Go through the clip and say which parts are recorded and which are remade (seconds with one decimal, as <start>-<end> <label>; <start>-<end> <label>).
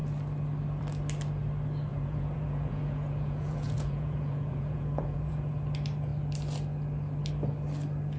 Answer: 0.0-1.9 recorded; 1.9-5.5 remade; 5.5-8.2 recorded